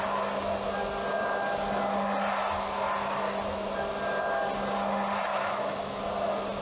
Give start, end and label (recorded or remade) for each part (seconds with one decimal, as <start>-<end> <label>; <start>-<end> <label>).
0.0-5.3 recorded; 5.3-6.0 remade; 6.0-6.6 recorded